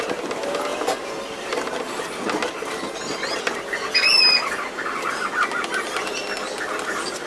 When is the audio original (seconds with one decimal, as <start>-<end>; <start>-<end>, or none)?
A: 0.0-7.3